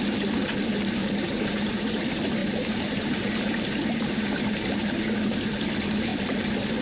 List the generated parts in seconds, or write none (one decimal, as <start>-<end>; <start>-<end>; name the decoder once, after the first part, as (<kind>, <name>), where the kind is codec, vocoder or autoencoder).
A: 1.0-2.0 (vocoder, BigVGAN v2); 2.4-5.1